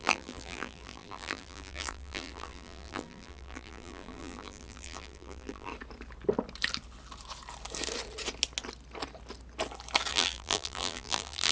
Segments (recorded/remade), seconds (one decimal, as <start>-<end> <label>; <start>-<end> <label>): 0.0-5.7 remade; 5.7-10.1 recorded; 10.1-11.5 remade

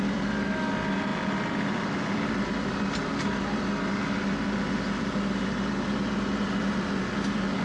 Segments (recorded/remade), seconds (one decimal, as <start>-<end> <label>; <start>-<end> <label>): 0.0-7.6 recorded

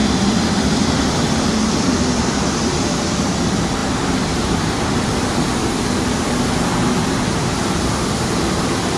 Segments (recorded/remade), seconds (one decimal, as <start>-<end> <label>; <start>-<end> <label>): 0.0-3.0 remade; 3.0-3.8 recorded; 3.8-6.0 remade; 6.0-7.3 recorded; 7.3-8.4 remade; 8.4-9.0 recorded

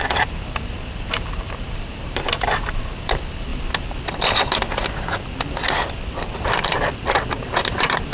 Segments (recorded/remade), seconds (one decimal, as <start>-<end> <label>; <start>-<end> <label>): 0.0-3.5 remade; 3.5-7.6 recorded; 7.6-8.1 remade